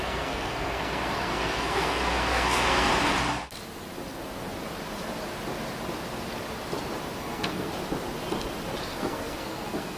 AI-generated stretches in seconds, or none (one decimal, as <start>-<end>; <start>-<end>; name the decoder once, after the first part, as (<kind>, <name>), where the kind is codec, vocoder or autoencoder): 0.0-2.9 (codec, SNAC); 7.2-7.7; 8.8-10.0